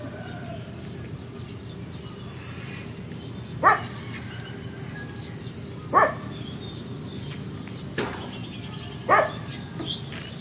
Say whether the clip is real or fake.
real